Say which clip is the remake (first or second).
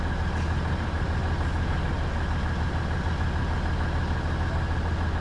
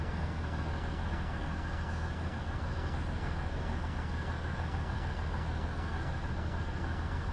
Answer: second